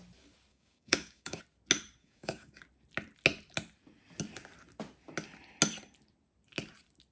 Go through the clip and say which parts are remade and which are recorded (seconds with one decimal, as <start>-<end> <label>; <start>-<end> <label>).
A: 0.0-0.5 recorded; 0.5-1.4 remade; 1.4-2.0 recorded; 2.0-2.6 remade; 2.6-7.1 recorded